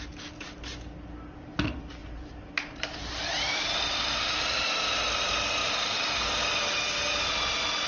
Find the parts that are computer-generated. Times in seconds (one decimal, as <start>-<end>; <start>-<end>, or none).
2.0-4.6; 5.6-6.2